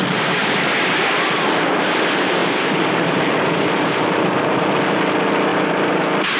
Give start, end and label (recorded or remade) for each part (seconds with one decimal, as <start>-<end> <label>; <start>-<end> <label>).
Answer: 0.0-2.4 recorded; 2.4-4.6 remade; 4.6-6.4 recorded

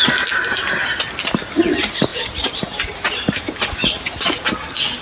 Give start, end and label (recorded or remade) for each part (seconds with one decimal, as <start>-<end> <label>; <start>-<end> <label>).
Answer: 0.0-2.1 recorded; 2.1-3.6 remade; 3.6-5.0 recorded

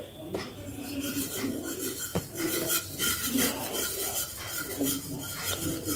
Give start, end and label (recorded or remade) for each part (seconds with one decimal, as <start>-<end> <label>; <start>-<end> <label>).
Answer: 0.0-0.5 recorded; 0.5-1.5 remade; 1.5-2.1 recorded; 2.1-4.7 remade; 4.7-6.0 recorded

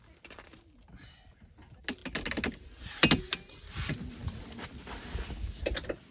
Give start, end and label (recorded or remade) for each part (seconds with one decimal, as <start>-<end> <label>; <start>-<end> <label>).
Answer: 0.0-4.2 recorded; 4.2-4.9 remade; 4.9-6.1 recorded

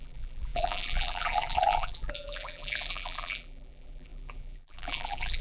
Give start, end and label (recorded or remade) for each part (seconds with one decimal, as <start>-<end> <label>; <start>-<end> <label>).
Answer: 0.0-5.4 remade